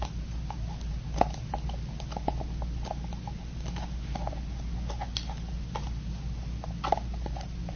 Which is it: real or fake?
real